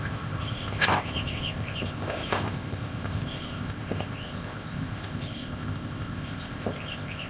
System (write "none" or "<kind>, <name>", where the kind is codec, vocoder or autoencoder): codec, ZipCodec